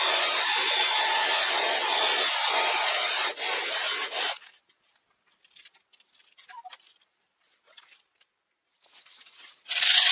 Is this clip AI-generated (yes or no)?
no